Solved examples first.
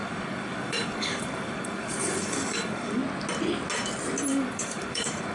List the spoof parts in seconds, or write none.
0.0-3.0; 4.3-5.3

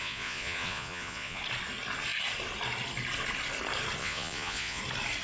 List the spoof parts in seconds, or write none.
0.0-1.4; 4.0-4.8

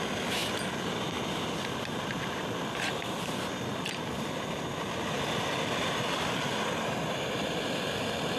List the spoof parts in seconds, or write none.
none

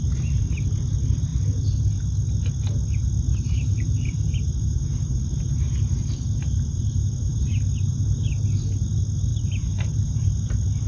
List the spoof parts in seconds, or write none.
3.3-8.3; 9.3-10.3

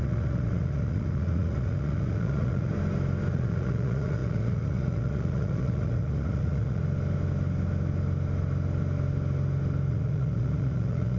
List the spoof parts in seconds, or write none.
0.0-2.7; 3.3-6.8; 9.9-11.2

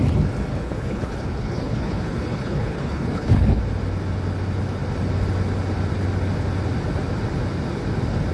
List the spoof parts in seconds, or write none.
0.5-3.6

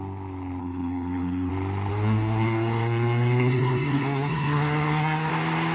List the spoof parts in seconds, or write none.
0.6-1.5; 1.9-5.3

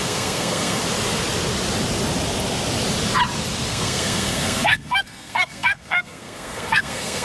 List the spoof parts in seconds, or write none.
0.0-0.8; 3.7-7.2